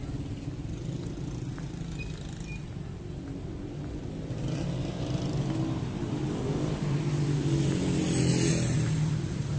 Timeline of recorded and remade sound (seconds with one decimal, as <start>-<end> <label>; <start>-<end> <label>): 0.0-9.6 recorded